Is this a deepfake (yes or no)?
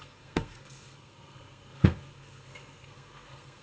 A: yes